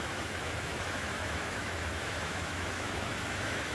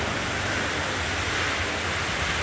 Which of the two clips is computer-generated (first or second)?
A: first